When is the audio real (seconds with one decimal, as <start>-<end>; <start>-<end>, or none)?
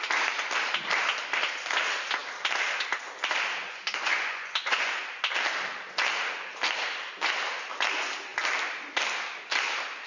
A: 0.0-3.6; 5.0-10.1